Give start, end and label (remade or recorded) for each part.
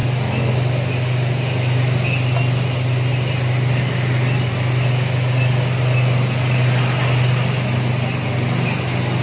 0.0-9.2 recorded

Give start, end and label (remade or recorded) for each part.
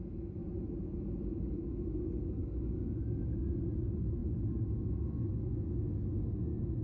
0.0-2.4 recorded; 2.4-3.6 remade; 3.6-6.8 recorded